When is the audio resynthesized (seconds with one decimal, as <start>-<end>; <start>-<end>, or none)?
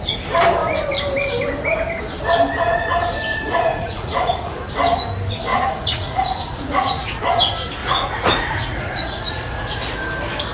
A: 3.3-4.7; 5.5-7.2; 7.8-9.9